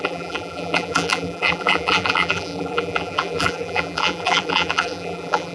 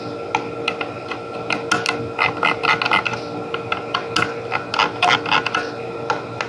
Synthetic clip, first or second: first